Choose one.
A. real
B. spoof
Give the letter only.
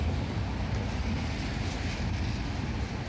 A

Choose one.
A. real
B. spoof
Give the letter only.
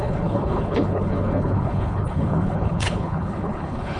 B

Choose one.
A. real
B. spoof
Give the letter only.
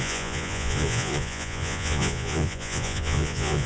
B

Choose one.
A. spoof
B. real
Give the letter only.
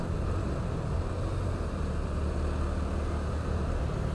B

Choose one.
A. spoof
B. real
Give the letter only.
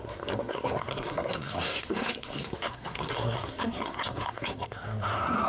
A